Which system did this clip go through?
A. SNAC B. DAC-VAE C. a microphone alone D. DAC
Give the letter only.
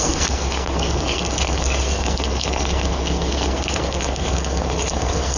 A